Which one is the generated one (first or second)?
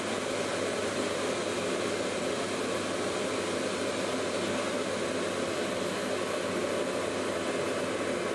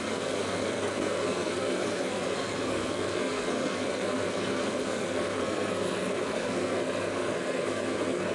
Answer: second